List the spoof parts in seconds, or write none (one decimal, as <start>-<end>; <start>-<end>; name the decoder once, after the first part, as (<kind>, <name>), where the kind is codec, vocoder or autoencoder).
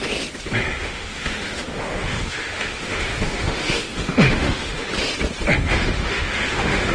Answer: 0.8-4.9 (autoencoder, DAC-VAE); 5.7-6.9